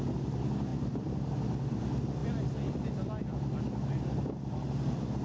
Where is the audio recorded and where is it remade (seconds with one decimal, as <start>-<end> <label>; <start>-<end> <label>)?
0.0-5.2 recorded